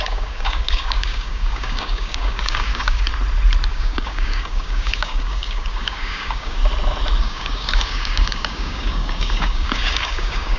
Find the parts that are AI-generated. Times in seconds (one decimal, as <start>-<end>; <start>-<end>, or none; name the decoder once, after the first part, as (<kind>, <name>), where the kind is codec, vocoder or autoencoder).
0.0-3.1 (codec, DAC); 3.7-6.6; 7.2-10.6